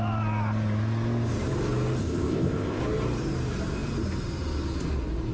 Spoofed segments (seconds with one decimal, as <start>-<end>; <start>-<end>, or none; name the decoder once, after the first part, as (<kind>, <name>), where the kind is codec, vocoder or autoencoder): 2.0-2.8 (codec, ZipCodec)